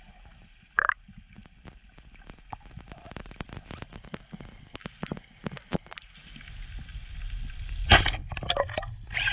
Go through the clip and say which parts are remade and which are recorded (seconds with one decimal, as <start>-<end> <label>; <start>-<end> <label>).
0.0-6.9 recorded; 6.9-8.9 remade; 8.9-9.3 recorded

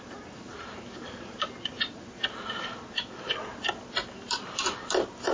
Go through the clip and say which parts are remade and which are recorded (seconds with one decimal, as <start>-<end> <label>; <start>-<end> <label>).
0.0-5.3 recorded

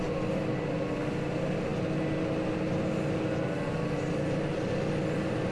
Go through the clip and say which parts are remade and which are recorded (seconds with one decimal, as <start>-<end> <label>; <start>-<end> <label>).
0.0-5.5 recorded

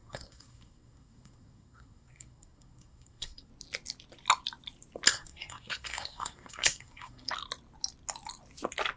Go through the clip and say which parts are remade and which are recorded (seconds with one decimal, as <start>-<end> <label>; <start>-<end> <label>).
0.0-3.5 remade; 3.5-5.1 recorded; 5.1-7.3 remade; 7.3-9.0 recorded

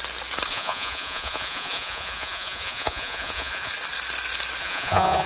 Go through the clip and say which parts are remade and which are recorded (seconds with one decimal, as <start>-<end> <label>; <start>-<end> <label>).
0.0-0.5 recorded; 0.5-3.7 remade; 3.7-4.6 recorded; 4.6-5.3 remade